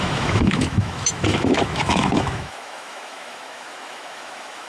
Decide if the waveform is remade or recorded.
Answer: remade